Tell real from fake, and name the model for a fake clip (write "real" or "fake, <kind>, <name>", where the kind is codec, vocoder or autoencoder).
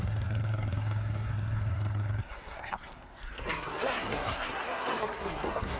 fake, codec, SNAC